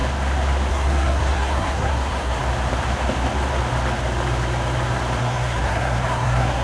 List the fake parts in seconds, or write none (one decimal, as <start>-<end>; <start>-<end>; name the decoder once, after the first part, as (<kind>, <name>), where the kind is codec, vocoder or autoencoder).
0.7-2.4 (codec, SNAC); 5.2-6.6